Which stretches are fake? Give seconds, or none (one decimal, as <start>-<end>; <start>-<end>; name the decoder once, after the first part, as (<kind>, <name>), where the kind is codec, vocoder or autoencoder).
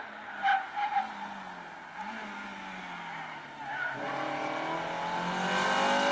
none